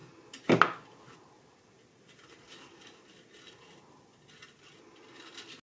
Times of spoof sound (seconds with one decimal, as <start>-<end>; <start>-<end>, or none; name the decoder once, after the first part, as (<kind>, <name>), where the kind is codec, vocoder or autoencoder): none